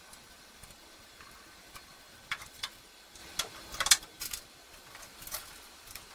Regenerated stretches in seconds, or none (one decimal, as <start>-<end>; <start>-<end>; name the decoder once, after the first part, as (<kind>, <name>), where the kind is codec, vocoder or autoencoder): none